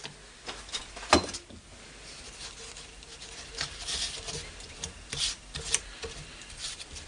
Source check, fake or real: real